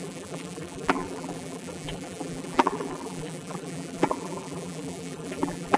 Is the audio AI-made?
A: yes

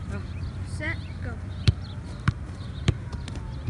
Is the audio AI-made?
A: yes